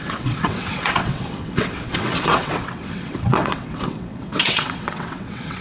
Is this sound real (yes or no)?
no